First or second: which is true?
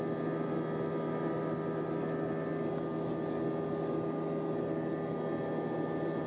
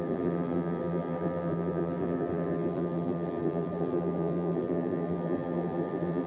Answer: first